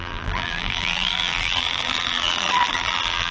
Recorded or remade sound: remade